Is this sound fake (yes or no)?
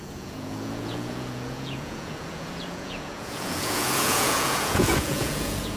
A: yes